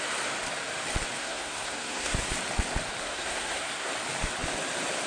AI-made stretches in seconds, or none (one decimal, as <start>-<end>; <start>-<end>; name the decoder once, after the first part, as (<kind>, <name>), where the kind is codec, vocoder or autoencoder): 1.2-2.2 (codec, SNAC); 3.0-3.9